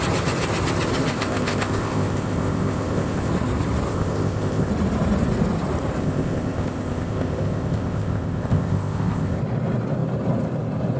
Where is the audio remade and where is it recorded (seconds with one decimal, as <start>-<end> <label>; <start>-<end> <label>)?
0.0-1.1 recorded; 1.1-3.3 remade; 3.3-3.9 recorded; 3.9-4.7 remade; 4.7-6.0 recorded; 6.0-9.4 remade; 9.4-11.0 recorded